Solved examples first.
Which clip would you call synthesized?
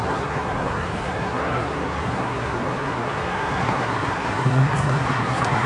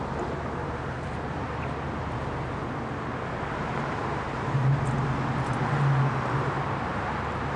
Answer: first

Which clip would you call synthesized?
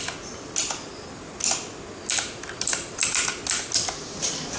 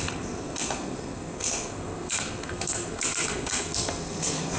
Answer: second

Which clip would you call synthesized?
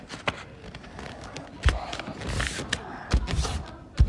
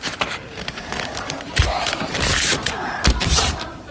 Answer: second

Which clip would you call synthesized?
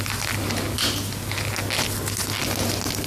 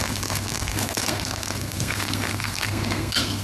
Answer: second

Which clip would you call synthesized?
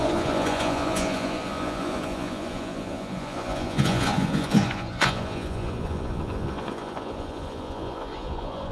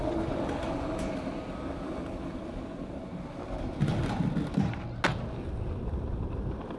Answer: first